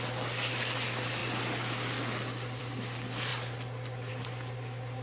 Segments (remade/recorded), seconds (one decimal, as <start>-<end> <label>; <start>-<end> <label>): 0.0-5.0 recorded